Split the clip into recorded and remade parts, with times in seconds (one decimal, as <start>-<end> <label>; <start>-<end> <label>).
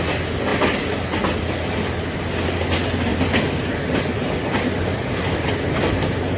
0.0-6.4 recorded